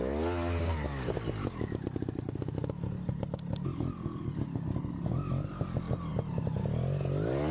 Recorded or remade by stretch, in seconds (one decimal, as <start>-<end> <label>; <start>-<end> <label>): 0.0-7.5 recorded